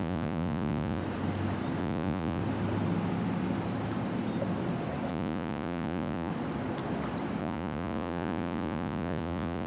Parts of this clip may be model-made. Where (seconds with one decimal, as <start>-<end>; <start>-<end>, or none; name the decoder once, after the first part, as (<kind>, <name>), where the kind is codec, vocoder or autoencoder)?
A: 0.0-1.0 (vocoder, Vocos); 1.8-2.4; 5.1-6.3; 7.4-9.7